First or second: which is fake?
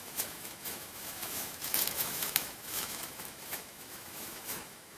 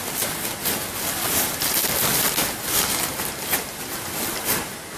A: first